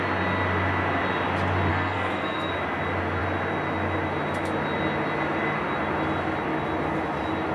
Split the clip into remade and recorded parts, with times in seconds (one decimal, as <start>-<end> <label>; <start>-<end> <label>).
0.0-1.7 recorded; 1.7-2.5 remade; 2.5-7.5 recorded